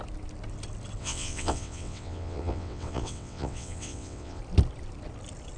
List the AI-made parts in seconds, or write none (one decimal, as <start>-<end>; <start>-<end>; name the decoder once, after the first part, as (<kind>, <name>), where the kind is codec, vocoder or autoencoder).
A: 1.0-4.4 (vocoder, WaveNeXt)